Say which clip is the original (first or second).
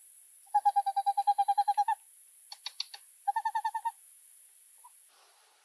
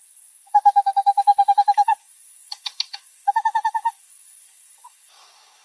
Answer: first